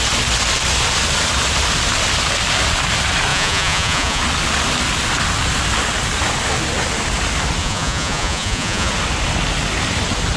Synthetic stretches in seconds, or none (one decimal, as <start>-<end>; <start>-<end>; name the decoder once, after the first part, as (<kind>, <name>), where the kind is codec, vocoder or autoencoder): 3.3-4.2 (vocoder, Vocos); 7.6-8.9